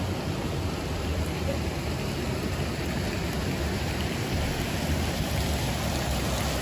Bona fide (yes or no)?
yes